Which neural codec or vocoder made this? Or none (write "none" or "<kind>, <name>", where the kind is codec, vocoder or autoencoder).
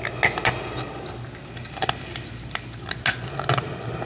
none